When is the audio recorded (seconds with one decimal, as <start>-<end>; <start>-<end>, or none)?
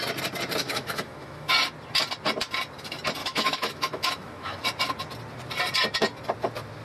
0.0-0.6; 1.5-3.2; 4.6-6.8